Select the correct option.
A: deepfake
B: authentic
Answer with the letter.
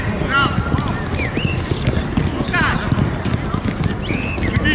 B